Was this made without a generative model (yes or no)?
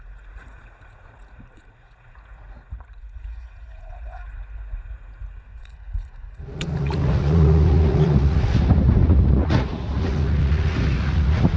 no